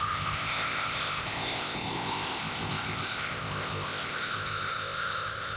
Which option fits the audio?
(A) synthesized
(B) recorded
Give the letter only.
A